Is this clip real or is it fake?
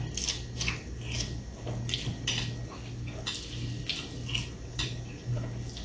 real